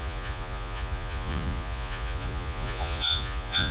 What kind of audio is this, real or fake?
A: fake